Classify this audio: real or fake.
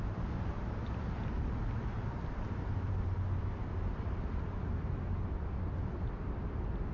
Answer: fake